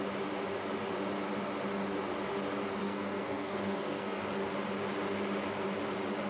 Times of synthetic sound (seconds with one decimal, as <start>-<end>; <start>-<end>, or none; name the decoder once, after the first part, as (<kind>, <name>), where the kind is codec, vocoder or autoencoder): 2.8-4.2 (codec, SNAC)